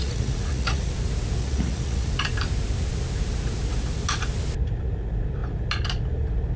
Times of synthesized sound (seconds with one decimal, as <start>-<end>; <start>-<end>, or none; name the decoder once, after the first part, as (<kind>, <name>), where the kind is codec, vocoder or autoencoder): 0.0-0.9 (vocoder, Vocos); 1.4-2.1